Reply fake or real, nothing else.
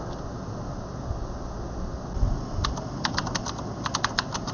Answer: real